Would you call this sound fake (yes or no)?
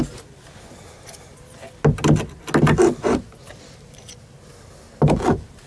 no